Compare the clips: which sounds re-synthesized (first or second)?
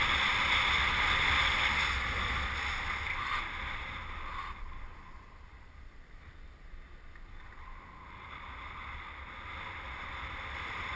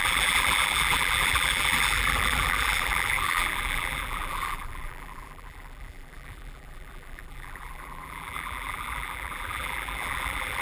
second